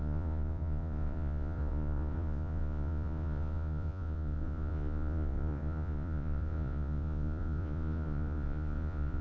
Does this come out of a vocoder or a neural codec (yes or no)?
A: yes